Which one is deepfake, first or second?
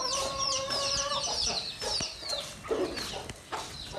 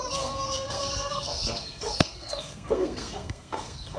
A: second